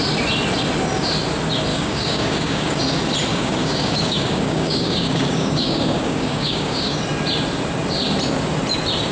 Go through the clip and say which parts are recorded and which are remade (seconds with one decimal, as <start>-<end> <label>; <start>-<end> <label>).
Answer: 0.0-1.7 recorded; 1.7-2.8 remade; 2.8-3.3 recorded; 3.3-7.0 remade; 7.0-9.1 recorded